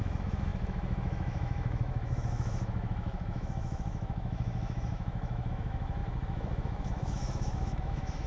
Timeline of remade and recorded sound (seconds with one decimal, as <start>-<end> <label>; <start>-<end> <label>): 0.0-8.3 remade